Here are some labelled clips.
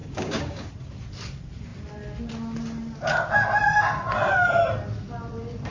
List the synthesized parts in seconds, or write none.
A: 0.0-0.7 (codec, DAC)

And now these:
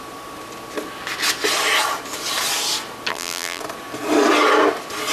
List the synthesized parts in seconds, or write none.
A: 3.1-3.6 (vocoder, BigVGAN v2)

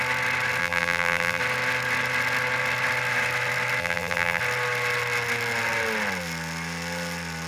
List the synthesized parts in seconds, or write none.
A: 0.6-1.4 (vocoder, BigVGAN v2); 3.8-4.4

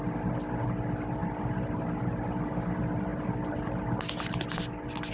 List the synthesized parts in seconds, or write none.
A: none

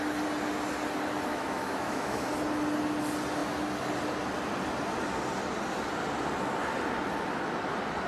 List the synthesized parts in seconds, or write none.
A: 1.3-2.3 (autoencoder, DAC-VAE)